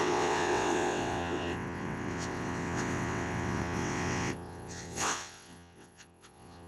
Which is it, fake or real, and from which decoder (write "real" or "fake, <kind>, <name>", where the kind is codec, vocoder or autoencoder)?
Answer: fake, vocoder, WaveNeXt